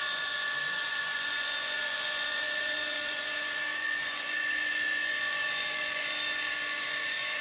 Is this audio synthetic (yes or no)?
yes